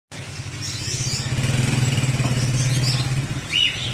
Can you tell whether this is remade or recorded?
recorded